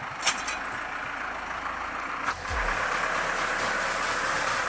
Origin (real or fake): real